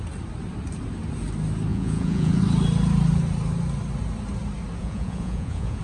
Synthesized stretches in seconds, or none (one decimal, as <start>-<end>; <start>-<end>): 1.7-2.4; 4.8-5.8